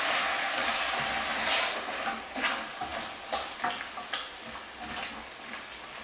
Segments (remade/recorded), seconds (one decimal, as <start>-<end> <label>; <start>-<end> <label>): 0.0-6.0 recorded